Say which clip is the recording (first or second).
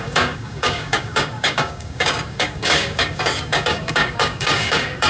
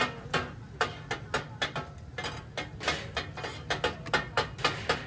second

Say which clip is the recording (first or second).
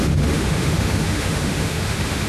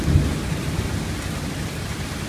second